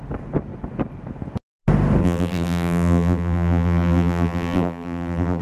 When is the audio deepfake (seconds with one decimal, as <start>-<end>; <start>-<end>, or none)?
2.0-5.4